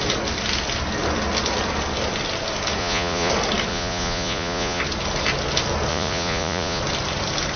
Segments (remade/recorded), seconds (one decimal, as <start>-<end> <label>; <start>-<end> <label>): 0.0-2.8 recorded; 2.8-3.3 remade; 3.3-3.7 recorded; 3.7-4.8 remade; 4.8-5.9 recorded; 5.9-6.8 remade; 6.8-7.6 recorded